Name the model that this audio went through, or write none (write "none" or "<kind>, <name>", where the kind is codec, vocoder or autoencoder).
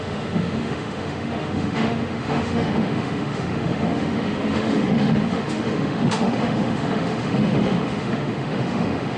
autoencoder, DAC-VAE